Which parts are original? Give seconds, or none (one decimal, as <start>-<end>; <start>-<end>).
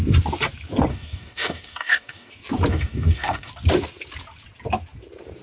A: 0.0-0.9; 2.3-2.7; 3.5-5.4